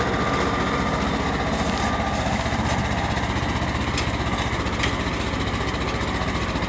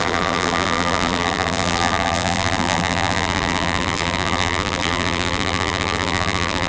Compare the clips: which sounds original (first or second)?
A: first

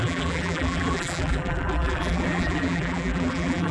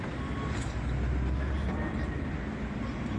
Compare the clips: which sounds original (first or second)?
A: second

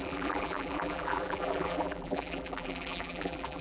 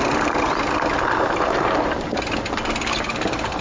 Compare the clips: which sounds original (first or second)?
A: second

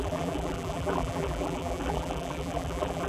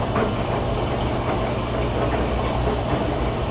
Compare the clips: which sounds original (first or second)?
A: second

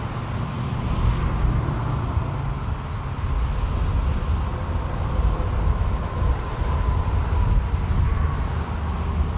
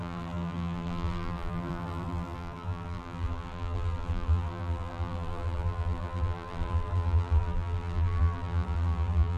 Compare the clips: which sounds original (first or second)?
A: first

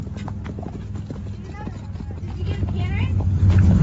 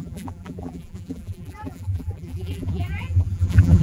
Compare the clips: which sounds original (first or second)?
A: first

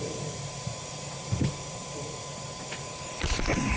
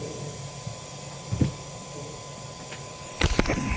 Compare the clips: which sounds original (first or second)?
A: second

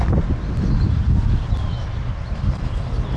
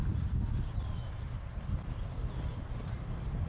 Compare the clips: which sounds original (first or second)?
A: first